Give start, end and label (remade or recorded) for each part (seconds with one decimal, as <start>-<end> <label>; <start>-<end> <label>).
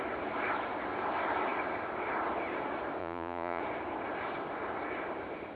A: 0.0-3.0 recorded; 3.0-3.6 remade; 3.6-5.6 recorded